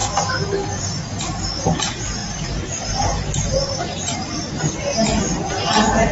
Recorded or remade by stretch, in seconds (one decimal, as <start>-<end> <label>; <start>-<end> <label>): 0.0-2.2 recorded; 2.2-4.8 remade; 4.8-6.1 recorded

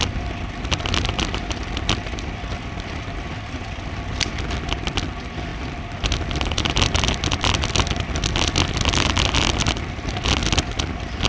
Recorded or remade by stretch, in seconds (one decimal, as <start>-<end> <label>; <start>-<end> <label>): 0.0-11.3 remade

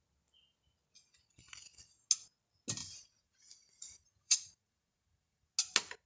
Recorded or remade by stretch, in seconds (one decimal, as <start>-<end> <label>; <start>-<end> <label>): 0.0-2.8 recorded; 2.8-5.5 remade; 5.5-6.1 recorded

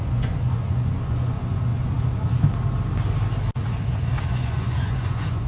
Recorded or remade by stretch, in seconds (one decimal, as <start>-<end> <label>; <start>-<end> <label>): 0.0-1.7 remade; 1.7-4.3 recorded; 4.3-5.5 remade

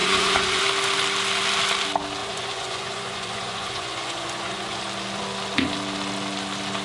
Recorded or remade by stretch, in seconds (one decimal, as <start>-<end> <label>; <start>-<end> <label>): 0.0-0.6 remade; 0.6-2.2 recorded; 2.2-4.8 remade; 4.8-6.8 recorded